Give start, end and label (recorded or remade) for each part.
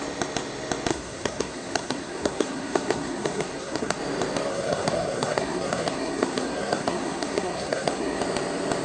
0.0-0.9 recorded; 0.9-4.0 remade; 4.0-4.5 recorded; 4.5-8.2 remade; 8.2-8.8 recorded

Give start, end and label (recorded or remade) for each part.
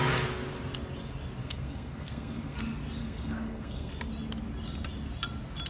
0.0-1.4 recorded; 1.4-2.6 remade; 2.6-3.0 recorded; 3.0-3.9 remade; 3.9-5.7 recorded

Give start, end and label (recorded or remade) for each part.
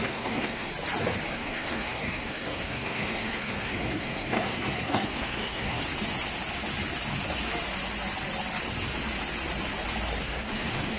0.0-0.7 remade; 0.7-1.3 recorded; 1.3-5.8 remade; 5.8-10.2 recorded; 10.2-11.0 remade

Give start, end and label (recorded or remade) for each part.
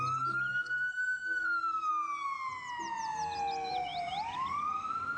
0.0-0.5 recorded; 0.5-1.9 remade; 1.9-5.2 recorded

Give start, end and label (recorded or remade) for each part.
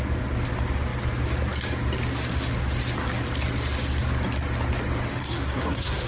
0.0-5.2 recorded; 5.2-6.1 remade